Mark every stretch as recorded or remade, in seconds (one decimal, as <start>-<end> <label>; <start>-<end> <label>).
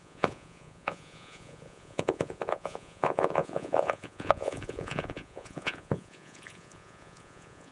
0.0-7.7 remade